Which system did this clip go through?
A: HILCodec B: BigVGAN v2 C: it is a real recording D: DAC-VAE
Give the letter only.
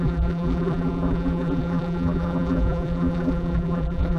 B